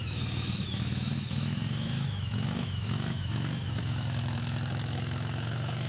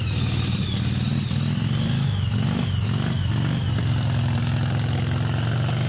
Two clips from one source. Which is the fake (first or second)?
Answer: first